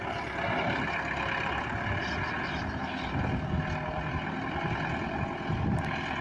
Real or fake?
real